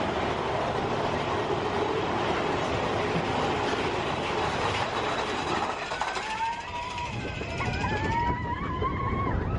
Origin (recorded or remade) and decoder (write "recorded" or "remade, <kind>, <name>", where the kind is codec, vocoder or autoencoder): recorded